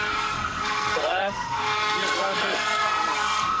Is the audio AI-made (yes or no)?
yes